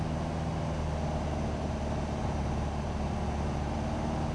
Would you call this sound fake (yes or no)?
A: no